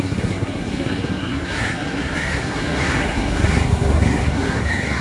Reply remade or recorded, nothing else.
remade